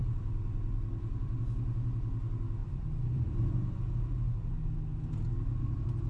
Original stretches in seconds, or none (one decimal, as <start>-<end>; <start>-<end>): 1.4-2.6; 3.5-6.1